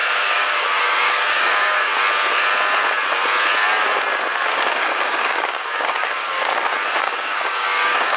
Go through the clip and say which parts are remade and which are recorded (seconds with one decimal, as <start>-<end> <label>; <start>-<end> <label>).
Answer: 0.0-1.9 remade; 1.9-4.5 recorded; 4.5-6.2 remade; 6.2-7.0 recorded; 7.0-8.2 remade